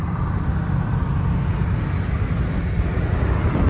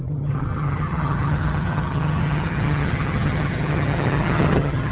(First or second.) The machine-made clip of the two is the second